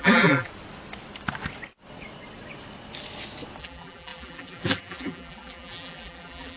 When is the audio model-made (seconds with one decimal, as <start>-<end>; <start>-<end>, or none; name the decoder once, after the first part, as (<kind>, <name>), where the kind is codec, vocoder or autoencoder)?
0.0-0.5 (vocoder, BigVGAN v2); 3.6-6.6